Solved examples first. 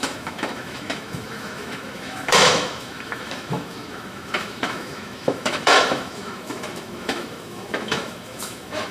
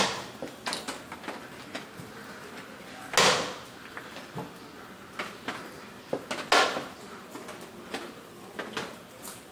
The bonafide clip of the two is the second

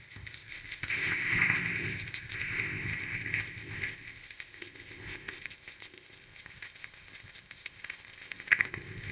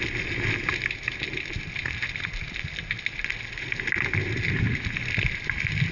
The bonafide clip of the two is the second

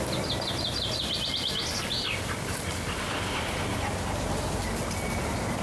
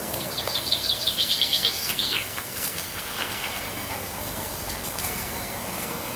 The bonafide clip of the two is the first